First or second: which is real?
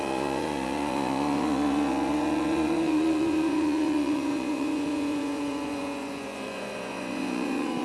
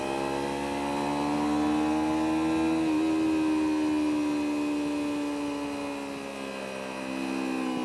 second